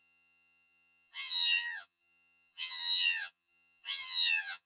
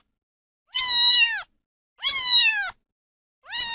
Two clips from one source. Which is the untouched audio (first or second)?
second